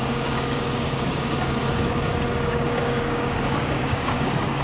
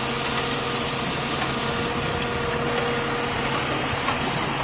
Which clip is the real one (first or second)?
second